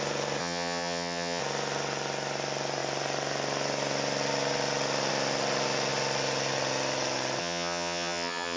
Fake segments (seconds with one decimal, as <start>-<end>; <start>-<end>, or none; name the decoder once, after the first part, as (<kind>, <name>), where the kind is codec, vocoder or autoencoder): 0.4-1.4 (vocoder, HiFi-GAN); 7.4-8.6